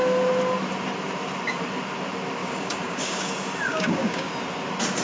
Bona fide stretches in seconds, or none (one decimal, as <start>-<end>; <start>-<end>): 0.0-2.4; 3.3-3.7; 4.3-5.0